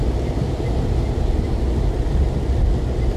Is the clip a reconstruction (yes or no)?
no